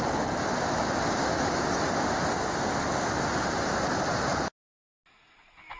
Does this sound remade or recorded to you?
recorded